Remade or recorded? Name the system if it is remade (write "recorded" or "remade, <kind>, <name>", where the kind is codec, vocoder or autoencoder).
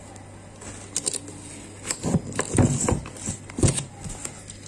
recorded